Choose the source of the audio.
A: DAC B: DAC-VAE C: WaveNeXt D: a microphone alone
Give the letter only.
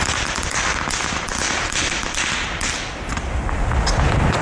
D